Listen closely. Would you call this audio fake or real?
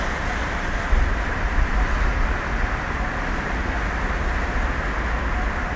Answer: real